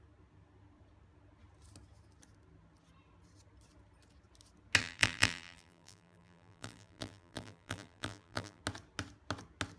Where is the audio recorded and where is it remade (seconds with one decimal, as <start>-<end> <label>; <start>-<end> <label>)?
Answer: 0.0-4.8 recorded; 4.8-8.6 remade; 8.6-9.8 recorded